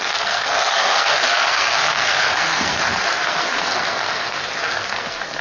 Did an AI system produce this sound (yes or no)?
yes